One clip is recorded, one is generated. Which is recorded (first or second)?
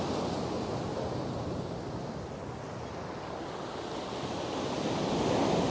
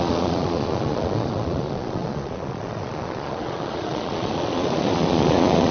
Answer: first